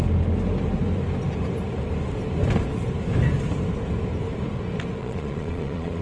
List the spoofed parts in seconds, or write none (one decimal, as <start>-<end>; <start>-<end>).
5.0-6.0

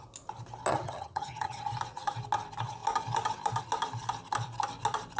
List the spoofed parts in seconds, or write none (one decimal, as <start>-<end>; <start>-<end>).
0.7-1.6

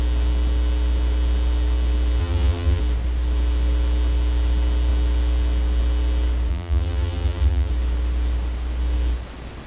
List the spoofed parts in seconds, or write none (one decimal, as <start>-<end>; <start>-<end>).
2.2-2.8; 6.5-7.7